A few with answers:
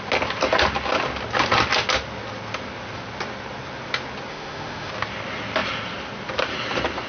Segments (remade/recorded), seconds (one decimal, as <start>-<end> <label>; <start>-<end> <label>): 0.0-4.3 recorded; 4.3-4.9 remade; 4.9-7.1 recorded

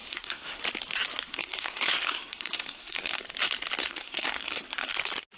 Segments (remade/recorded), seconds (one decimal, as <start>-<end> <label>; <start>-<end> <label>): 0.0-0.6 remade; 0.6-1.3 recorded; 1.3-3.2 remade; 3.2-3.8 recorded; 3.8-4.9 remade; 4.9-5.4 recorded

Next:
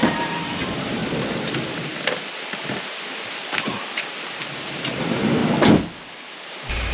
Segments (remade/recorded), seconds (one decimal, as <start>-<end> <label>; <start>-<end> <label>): 0.0-1.0 remade; 1.0-4.8 recorded; 4.8-5.4 remade; 5.4-6.5 recorded; 6.5-6.9 remade

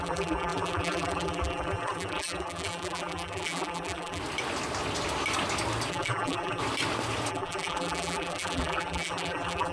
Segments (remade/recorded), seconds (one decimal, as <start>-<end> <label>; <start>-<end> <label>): 0.0-4.2 remade; 4.2-5.9 recorded; 5.9-6.6 remade; 6.6-7.3 recorded; 7.3-9.7 remade

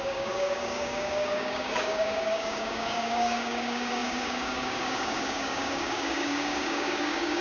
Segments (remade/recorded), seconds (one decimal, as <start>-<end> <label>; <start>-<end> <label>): 0.0-7.4 remade

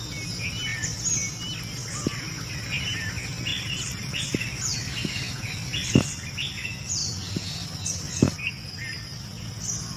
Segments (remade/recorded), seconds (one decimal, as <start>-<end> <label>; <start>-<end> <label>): 0.0-3.5 recorded; 3.5-4.5 remade; 4.5-10.0 recorded

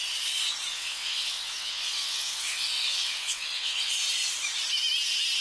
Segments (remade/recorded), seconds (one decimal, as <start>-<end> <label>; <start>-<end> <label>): 0.0-0.7 recorded; 0.7-3.9 remade; 3.9-5.4 recorded